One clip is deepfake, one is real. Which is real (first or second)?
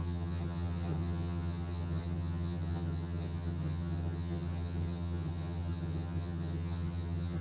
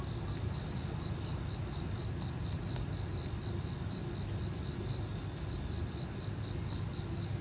second